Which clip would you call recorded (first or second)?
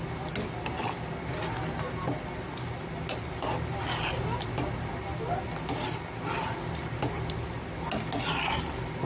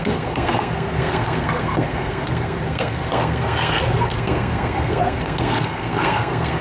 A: first